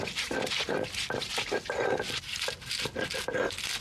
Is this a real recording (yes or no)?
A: yes